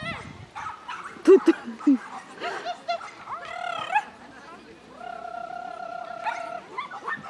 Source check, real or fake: real